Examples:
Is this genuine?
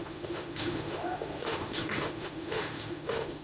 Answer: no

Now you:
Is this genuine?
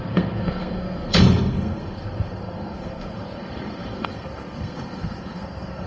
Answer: no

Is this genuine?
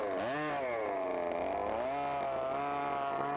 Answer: yes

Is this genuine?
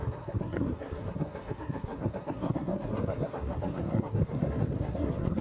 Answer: no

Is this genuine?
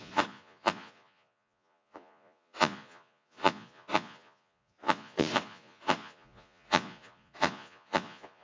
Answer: no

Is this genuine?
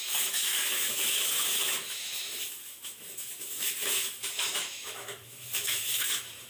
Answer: no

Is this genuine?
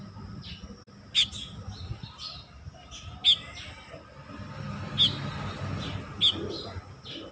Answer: yes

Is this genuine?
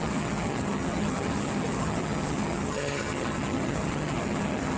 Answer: no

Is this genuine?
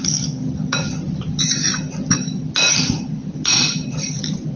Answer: yes